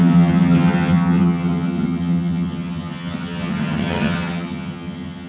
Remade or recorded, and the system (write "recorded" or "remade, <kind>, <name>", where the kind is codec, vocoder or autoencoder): remade, vocoder, HiFi-GAN